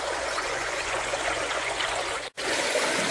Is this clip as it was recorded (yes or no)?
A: no